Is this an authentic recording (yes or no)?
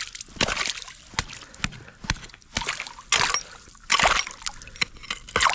yes